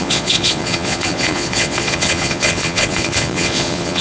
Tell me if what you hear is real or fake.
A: fake